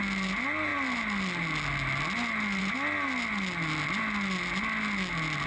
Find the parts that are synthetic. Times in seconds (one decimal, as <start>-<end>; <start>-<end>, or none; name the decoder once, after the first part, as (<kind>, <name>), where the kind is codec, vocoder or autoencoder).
none